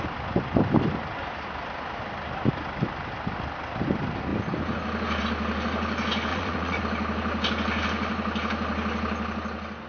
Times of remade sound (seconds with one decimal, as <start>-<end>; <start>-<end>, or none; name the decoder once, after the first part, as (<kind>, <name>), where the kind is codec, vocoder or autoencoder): 6.3-6.8 (vocoder, Vocos)

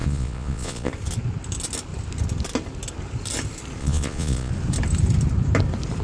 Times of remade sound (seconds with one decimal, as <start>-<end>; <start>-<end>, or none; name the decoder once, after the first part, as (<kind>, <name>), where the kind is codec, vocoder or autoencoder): 0.0-0.9 (vocoder, Vocos); 3.8-4.5